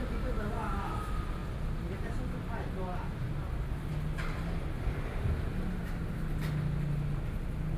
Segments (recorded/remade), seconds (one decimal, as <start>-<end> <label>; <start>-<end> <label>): 0.0-7.8 recorded